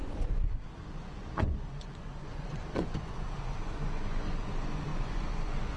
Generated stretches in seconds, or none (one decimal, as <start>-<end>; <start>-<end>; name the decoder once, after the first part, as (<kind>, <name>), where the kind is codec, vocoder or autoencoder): 0.0-5.8 (vocoder, Vocos)